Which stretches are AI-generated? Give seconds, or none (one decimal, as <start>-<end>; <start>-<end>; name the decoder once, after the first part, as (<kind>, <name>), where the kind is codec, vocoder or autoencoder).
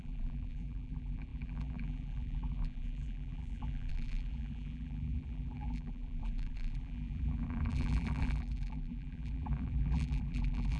0.0-10.8 (vocoder, BigVGAN v2)